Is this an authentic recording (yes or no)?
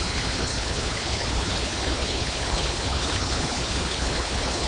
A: no